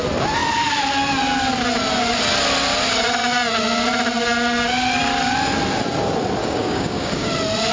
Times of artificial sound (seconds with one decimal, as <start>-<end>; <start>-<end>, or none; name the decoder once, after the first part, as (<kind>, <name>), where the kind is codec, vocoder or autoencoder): 6.4-7.3 (codec, DAC)